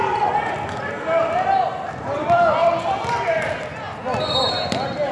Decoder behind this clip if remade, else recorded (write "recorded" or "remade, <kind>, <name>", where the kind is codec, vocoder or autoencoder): recorded